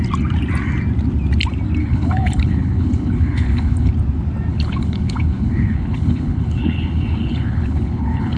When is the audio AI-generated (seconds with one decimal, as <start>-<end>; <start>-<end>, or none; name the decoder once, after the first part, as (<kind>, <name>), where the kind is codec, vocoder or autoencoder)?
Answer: 1.8-3.9 (codec, HILCodec); 4.5-8.4